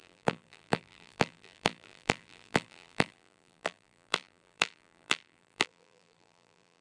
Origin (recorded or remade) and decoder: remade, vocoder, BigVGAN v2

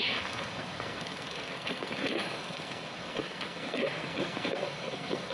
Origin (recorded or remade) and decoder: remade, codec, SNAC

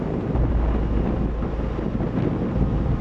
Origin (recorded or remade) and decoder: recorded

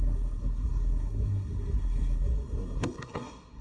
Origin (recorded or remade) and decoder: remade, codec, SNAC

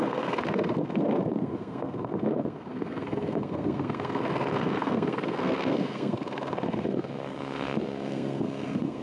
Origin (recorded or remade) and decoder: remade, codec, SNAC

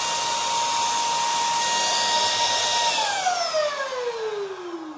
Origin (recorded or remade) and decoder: recorded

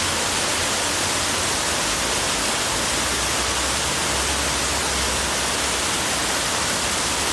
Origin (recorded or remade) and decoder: recorded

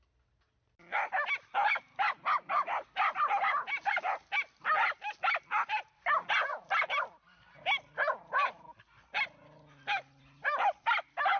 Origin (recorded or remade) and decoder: recorded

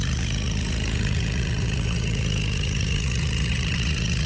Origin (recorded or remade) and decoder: remade, vocoder, Vocos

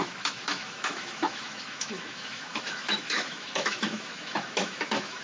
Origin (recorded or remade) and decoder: remade, autoencoder, DAC-VAE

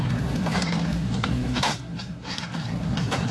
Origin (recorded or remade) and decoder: remade, codec, SNAC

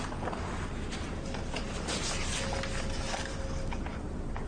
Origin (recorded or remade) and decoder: recorded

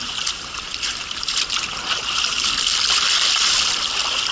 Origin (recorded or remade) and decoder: remade, vocoder, BigVGAN v2